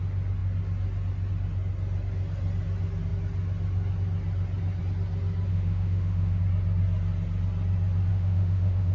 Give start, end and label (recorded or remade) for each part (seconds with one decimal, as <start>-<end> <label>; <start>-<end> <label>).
0.0-5.5 recorded; 5.5-6.4 remade; 6.4-8.1 recorded; 8.1-8.9 remade